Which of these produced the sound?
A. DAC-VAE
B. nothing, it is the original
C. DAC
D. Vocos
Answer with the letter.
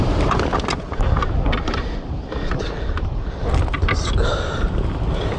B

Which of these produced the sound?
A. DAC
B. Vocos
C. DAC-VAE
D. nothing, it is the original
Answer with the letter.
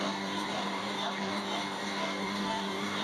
A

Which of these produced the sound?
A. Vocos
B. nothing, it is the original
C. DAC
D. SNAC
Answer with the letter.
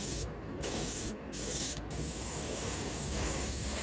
C